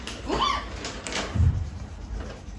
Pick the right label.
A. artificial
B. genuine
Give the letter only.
A